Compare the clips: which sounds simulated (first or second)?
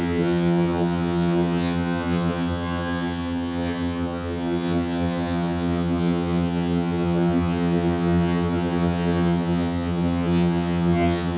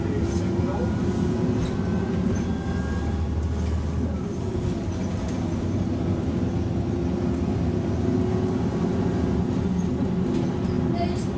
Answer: first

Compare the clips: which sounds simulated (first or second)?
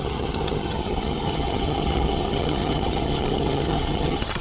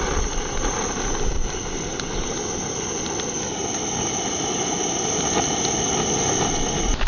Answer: first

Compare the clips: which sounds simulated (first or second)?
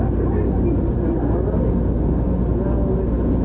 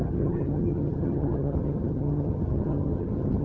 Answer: second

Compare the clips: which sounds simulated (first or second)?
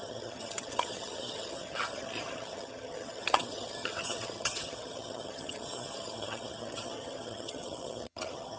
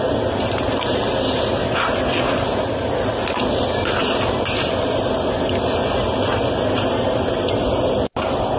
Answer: first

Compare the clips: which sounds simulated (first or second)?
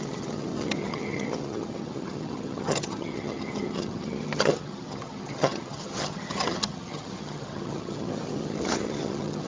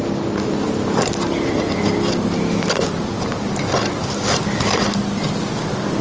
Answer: first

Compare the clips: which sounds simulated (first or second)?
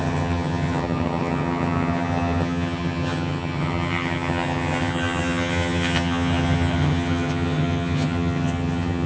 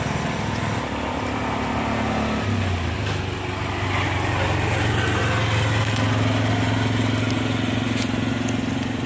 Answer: first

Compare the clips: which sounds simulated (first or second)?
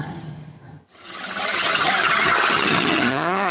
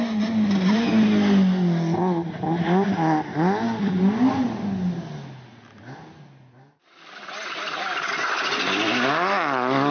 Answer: first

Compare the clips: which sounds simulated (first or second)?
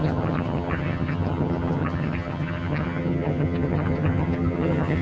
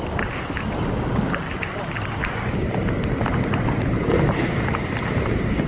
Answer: first